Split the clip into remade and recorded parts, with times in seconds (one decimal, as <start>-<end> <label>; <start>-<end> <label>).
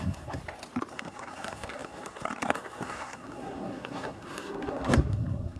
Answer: 0.0-0.4 remade; 0.4-0.9 recorded; 0.9-5.6 remade